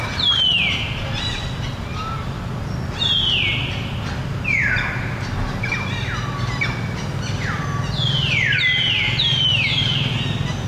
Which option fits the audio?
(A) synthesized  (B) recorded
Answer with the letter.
B